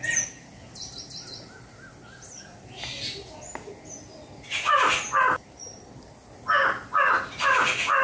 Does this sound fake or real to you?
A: real